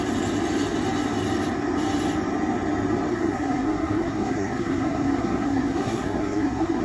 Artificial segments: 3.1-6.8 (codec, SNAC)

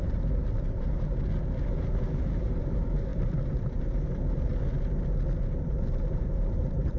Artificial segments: 0.0-0.4 (vocoder, BigVGAN v2); 2.4-4.5; 5.6-7.0

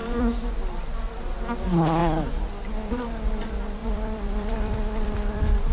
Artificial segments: 3.8-5.7 (vocoder, BigVGAN v2)

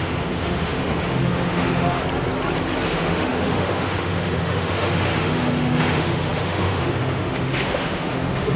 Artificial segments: 0.0-2.0 (autoencoder, DAC-VAE); 2.9-8.6

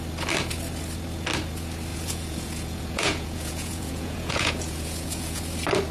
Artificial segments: 1.9-5.4 (vocoder, Vocos)

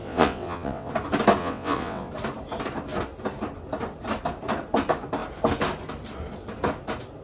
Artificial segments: 0.0-0.9 (vocoder, WaveNeXt); 1.4-2.1

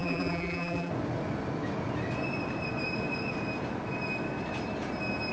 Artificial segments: 0.0-0.9 (vocoder, BigVGAN v2)

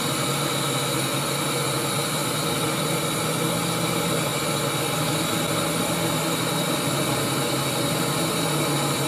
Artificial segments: none